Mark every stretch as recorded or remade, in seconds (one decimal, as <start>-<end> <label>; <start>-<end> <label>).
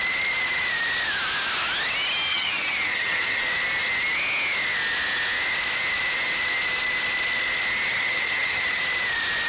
0.0-2.3 recorded; 2.3-3.4 remade; 3.4-7.9 recorded; 7.9-8.8 remade; 8.8-9.5 recorded